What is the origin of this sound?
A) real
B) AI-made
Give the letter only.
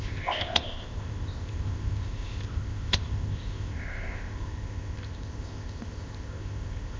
B